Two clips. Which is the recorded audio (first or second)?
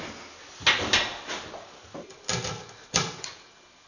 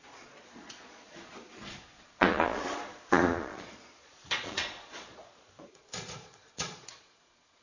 first